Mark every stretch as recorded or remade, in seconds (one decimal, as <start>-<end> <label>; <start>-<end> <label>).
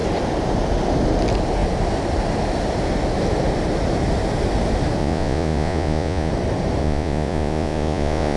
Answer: 0.0-5.0 recorded; 5.0-6.3 remade; 6.3-6.8 recorded; 6.8-8.4 remade